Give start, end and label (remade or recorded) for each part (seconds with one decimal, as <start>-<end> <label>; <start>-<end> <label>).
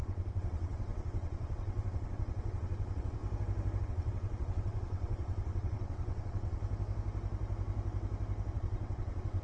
0.0-3.2 remade; 3.2-3.8 recorded; 3.8-6.6 remade; 6.6-8.5 recorded; 8.5-9.4 remade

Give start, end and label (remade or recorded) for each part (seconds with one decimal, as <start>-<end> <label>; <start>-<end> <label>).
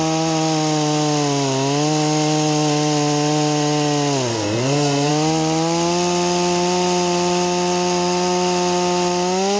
0.0-4.3 recorded; 4.3-5.1 remade; 5.1-9.6 recorded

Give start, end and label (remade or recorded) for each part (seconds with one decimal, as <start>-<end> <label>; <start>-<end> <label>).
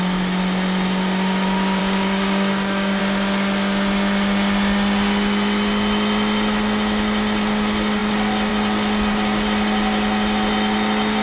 0.0-1.8 recorded; 1.8-3.0 remade; 3.0-11.2 recorded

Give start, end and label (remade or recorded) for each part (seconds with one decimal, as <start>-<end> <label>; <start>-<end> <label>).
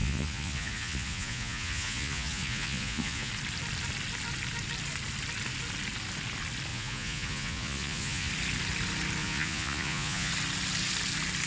0.0-3.3 remade; 3.3-6.7 recorded; 6.7-8.3 remade; 8.3-9.2 recorded; 9.2-10.3 remade; 10.3-11.5 recorded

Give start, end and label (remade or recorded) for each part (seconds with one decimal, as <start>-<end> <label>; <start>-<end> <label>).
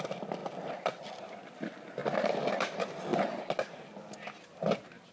0.0-2.0 remade; 2.0-2.6 recorded; 2.6-3.1 remade; 3.1-5.1 recorded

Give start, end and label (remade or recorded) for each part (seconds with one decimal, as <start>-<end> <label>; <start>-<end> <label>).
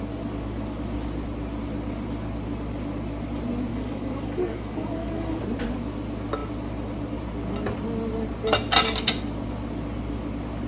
0.0-3.7 recorded; 3.7-5.4 remade; 5.4-10.7 recorded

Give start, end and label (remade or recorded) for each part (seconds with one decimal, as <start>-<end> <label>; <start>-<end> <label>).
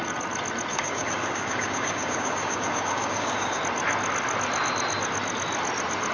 0.0-0.7 recorded; 0.7-3.6 remade; 3.6-6.1 recorded